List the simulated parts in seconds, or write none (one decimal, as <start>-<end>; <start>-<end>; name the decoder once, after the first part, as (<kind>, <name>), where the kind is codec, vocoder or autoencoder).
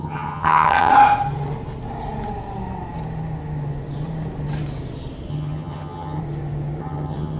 0.0-0.9 (vocoder, HiFi-GAN); 5.3-6.2; 6.8-7.4